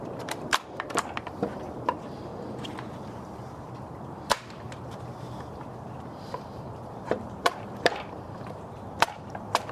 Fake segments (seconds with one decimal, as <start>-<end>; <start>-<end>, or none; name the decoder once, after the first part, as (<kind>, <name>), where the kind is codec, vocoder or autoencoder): 0.0-2.3 (vocoder, BigVGAN v2); 3.1-9.7